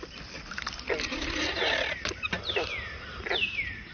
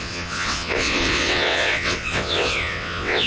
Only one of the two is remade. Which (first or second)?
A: second